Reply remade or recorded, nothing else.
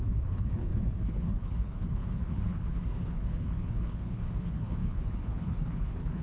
remade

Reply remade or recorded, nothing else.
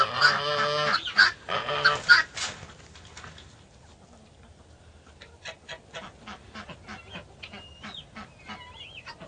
recorded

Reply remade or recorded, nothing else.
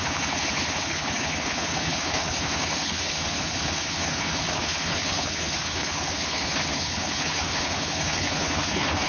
remade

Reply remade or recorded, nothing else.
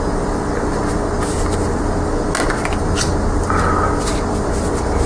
recorded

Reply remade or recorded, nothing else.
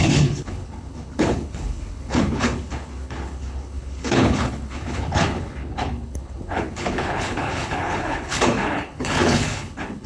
remade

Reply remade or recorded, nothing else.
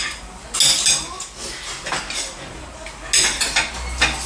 recorded